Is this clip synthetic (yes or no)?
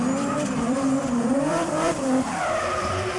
yes